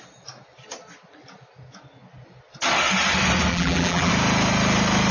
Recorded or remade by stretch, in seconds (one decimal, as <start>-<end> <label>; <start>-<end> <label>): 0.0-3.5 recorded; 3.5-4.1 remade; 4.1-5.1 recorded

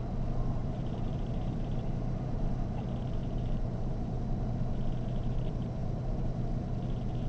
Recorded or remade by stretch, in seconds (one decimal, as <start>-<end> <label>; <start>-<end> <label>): 0.0-0.6 recorded; 0.6-2.5 remade; 2.5-3.2 recorded; 3.2-4.2 remade; 4.2-5.8 recorded; 5.8-6.4 remade; 6.4-7.3 recorded

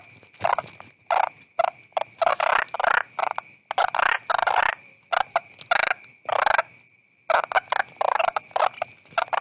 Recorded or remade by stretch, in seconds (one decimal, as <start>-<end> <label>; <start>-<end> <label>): 0.0-9.4 recorded

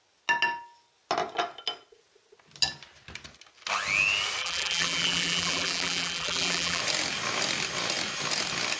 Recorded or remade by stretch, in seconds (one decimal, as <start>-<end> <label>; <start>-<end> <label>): 0.0-4.4 recorded; 4.4-6.8 remade; 6.8-8.8 recorded